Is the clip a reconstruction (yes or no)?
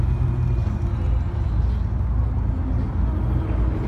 no